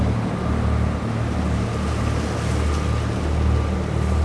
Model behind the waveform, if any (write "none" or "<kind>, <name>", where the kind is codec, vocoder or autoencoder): none